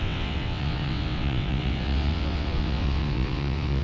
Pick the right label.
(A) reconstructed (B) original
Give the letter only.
A